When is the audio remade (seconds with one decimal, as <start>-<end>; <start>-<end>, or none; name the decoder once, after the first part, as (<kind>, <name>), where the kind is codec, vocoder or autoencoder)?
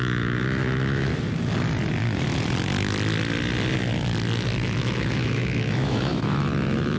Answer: 0.0-1.1 (autoencoder, DAC-VAE); 4.8-7.0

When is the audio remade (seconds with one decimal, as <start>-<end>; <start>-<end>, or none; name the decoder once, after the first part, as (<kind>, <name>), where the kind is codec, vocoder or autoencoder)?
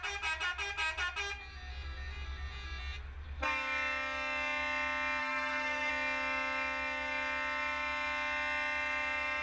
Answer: 5.2-5.9 (codec, SNAC)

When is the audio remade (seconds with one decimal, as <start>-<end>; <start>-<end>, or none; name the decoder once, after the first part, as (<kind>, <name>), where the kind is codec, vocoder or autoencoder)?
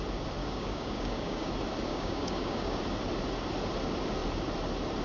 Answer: 0.4-1.5 (codec, DAC); 1.9-2.8